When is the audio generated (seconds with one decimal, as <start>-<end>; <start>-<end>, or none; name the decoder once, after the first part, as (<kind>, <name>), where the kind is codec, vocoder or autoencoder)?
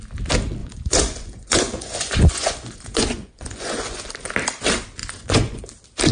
0.6-4.1 (vocoder, Vocos); 5.0-5.6